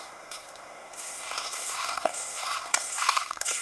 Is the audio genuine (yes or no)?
no